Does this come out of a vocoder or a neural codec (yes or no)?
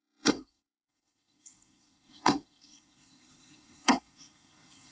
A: yes